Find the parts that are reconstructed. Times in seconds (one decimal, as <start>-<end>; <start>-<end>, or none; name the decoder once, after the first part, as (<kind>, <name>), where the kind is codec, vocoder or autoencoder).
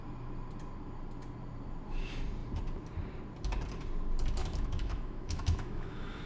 4.4-6.3 (autoencoder, DAC-VAE)